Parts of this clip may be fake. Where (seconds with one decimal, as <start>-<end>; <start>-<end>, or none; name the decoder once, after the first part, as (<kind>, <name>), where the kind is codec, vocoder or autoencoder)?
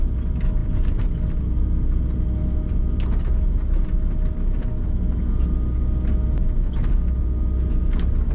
none